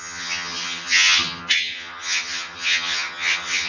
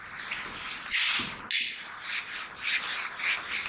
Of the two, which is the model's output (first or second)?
first